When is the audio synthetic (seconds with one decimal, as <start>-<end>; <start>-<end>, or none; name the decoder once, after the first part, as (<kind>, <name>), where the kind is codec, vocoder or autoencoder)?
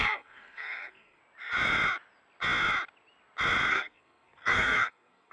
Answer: 0.0-1.2 (codec, SNAC); 3.7-5.3